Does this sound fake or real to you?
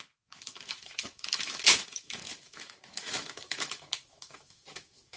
fake